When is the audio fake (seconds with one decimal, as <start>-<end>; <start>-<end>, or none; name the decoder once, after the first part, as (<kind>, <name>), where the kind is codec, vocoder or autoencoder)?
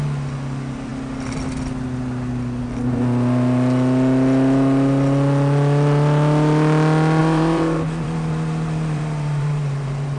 7.2-10.2 (vocoder, BigVGAN v2)